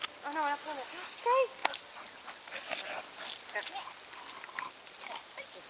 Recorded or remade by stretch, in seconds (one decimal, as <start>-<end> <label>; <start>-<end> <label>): 0.0-5.7 recorded